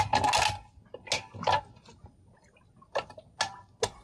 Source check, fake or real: real